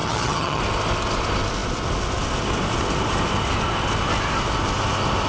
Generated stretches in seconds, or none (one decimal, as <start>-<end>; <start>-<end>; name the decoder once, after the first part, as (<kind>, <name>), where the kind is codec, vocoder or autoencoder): 0.0-0.6 (vocoder, HiFi-GAN)